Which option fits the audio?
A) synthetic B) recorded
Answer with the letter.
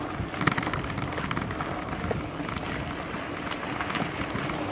B